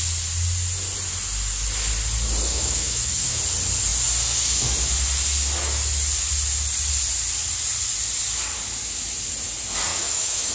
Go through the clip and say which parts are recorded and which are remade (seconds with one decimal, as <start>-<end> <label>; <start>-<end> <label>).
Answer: 0.0-2.5 recorded; 2.5-3.4 remade; 3.4-9.9 recorded; 9.9-10.5 remade